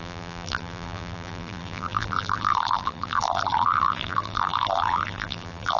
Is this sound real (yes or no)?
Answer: no